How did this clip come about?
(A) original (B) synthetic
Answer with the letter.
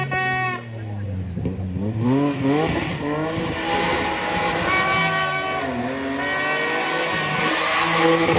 A